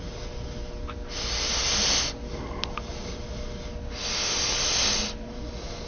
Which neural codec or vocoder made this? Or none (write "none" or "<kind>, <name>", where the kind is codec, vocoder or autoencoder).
none